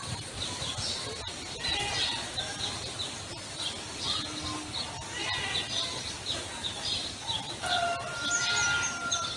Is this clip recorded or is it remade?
recorded